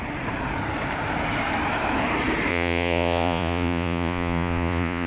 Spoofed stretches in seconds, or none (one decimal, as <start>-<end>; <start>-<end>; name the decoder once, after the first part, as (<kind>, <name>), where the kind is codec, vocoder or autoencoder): 2.5-5.1 (vocoder, Vocos)